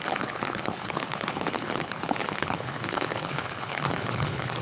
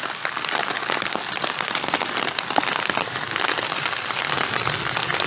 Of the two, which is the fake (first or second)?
first